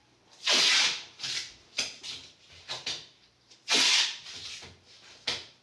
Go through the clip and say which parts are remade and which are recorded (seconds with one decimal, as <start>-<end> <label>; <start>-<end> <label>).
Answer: 0.0-4.6 remade; 4.6-5.6 recorded